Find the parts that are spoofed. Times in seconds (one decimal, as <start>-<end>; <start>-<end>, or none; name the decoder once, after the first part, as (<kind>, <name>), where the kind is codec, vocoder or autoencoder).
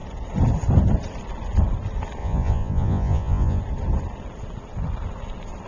2.2-3.6 (vocoder, Vocos)